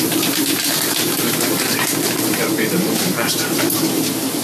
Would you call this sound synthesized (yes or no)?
yes